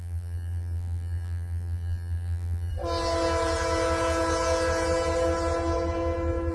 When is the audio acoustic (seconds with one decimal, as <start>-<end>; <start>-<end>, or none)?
2.7-6.5